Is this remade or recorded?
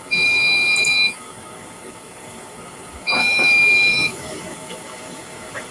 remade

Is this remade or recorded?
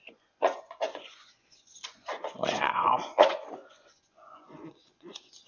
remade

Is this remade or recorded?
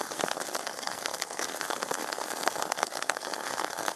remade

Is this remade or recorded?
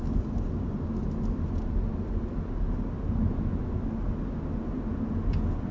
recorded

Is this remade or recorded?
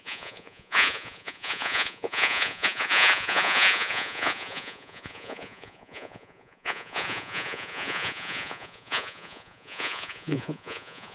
remade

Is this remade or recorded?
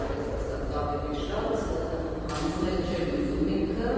remade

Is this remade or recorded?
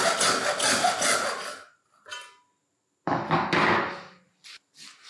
recorded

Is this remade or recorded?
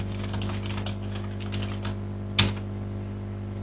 recorded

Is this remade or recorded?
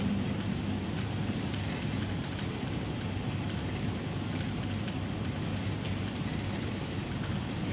recorded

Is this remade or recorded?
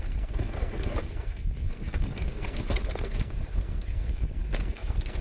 remade